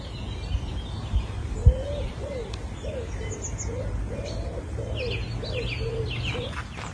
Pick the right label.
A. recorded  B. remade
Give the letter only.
A